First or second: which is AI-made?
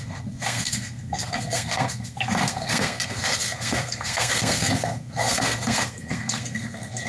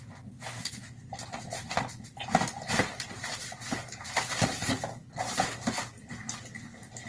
first